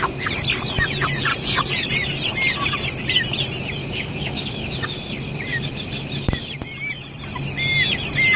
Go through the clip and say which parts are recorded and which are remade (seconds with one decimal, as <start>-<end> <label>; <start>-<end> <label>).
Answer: 0.0-1.3 recorded; 1.3-1.9 remade; 1.9-3.8 recorded; 3.8-4.7 remade; 4.7-8.4 recorded